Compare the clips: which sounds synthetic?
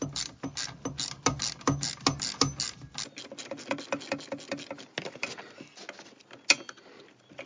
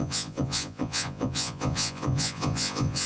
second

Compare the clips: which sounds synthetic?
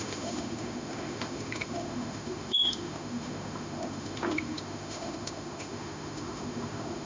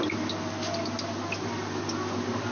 first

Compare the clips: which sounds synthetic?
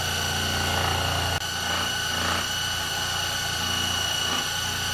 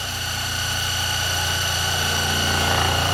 second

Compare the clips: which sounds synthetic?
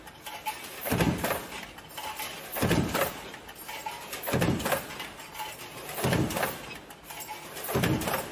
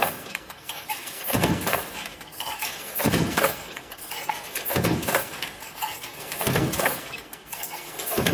second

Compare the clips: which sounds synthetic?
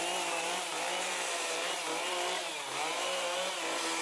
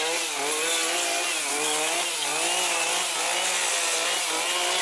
first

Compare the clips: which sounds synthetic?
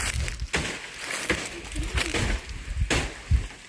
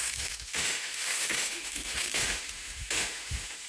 second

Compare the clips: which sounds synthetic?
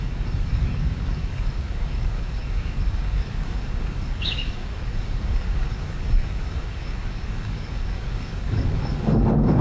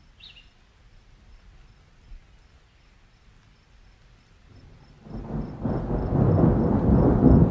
first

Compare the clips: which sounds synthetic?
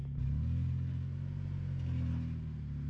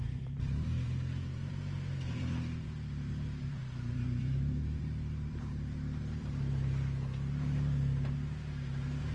second